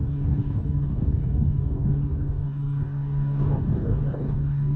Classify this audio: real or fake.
fake